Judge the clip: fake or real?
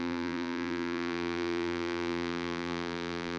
fake